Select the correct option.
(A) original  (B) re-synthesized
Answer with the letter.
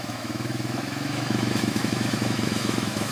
B